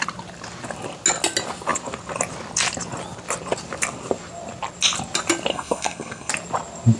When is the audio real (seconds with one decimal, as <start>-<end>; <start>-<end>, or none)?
0.0-5.5; 6.3-7.0